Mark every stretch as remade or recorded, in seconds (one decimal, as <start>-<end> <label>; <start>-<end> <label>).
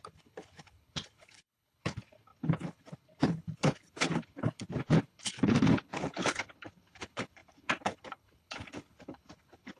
0.0-9.8 remade